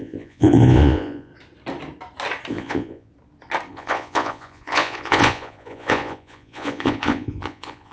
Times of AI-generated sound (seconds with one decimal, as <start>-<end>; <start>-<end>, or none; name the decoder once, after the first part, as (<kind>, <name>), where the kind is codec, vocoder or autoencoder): 0.0-1.3 (vocoder, Vocos); 2.5-3.1; 3.7-7.9